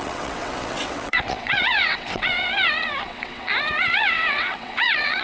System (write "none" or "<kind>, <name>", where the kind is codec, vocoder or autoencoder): vocoder, WaveNeXt